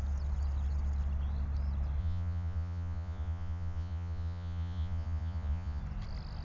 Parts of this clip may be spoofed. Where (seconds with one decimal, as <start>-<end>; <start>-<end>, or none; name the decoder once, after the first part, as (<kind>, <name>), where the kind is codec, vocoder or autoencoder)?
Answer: 2.0-5.8 (vocoder, Vocos)